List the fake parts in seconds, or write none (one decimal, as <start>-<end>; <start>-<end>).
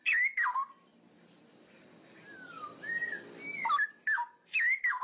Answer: 0.0-5.0